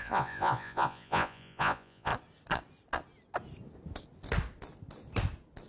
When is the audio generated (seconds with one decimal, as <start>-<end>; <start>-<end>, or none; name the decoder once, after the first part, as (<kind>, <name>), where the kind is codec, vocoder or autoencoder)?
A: 0.0-2.1 (vocoder, Vocos)